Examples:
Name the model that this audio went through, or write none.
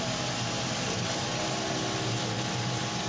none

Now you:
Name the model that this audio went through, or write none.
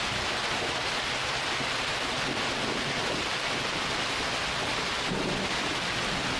none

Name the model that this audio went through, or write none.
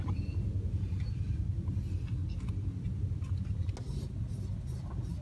none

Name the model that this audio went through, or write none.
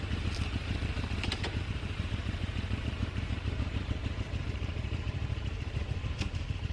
vocoder, BigVGAN v2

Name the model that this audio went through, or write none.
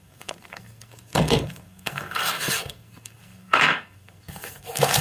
codec, SNAC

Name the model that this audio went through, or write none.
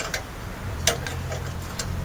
none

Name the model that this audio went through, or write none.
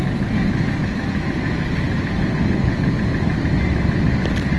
none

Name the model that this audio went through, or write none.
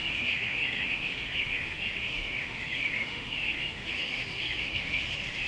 autoencoder, DAC-VAE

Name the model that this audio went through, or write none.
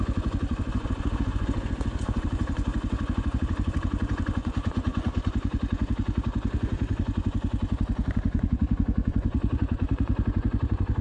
vocoder, Vocos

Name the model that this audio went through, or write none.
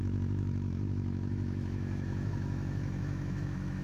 autoencoder, DAC-VAE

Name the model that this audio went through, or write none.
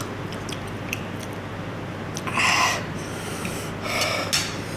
none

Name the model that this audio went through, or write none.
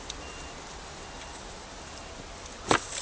none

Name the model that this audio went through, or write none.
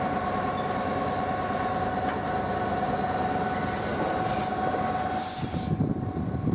none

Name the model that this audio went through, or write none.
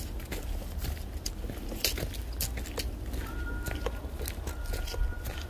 none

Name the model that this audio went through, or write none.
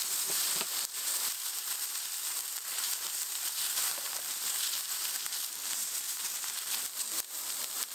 vocoder, BigVGAN v2